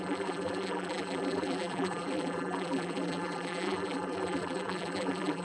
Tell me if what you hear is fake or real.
fake